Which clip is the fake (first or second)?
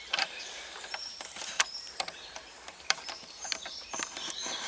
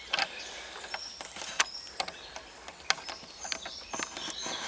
first